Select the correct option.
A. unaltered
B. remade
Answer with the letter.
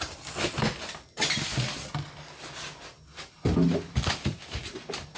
A